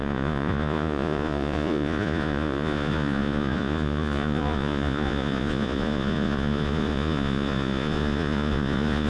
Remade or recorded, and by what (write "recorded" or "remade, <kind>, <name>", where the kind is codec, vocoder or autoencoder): remade, vocoder, Vocos